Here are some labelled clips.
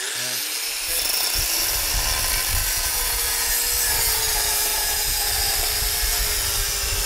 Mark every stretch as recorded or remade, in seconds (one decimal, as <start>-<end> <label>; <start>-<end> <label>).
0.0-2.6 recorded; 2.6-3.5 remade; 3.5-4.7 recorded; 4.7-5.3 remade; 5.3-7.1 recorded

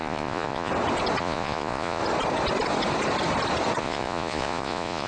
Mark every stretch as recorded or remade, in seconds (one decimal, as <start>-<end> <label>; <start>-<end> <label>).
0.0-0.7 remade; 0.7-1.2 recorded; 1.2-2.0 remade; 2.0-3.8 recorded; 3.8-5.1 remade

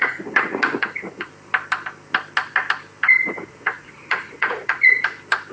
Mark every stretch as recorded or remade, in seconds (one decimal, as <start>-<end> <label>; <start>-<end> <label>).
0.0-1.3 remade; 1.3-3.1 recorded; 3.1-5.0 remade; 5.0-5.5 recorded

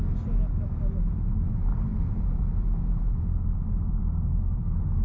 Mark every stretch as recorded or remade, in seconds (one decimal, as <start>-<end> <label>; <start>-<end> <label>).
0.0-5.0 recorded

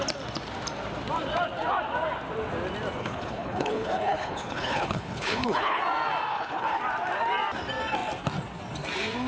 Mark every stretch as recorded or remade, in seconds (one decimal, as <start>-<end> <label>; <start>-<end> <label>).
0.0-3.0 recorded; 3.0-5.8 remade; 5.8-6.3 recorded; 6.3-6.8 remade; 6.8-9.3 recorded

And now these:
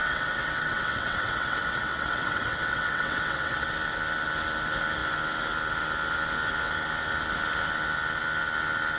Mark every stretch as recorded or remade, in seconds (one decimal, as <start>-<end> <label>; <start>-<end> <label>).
0.0-3.7 remade; 3.7-9.0 recorded